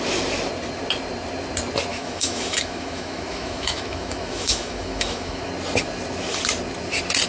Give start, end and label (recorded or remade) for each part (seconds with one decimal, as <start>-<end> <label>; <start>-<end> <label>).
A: 0.0-1.9 recorded; 1.9-5.5 remade; 5.5-7.3 recorded